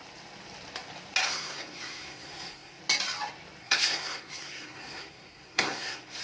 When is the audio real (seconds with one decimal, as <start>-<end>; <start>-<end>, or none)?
0.0-1.2; 2.8-3.6